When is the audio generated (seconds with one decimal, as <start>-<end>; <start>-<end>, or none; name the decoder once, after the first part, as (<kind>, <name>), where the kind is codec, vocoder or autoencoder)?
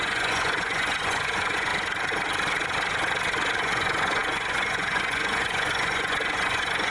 0.0-1.7 (vocoder, Vocos); 3.6-6.9